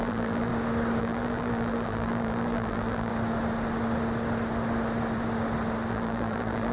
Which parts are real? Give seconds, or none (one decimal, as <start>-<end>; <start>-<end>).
0.5-1.0; 3.1-5.9